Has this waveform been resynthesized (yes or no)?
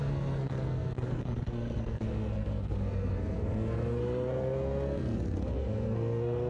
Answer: yes